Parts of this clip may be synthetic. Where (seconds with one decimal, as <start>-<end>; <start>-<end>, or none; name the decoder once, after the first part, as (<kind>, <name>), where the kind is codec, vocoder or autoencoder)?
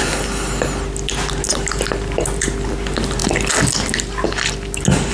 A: none